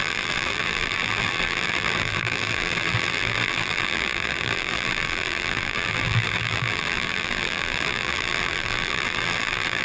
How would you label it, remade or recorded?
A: remade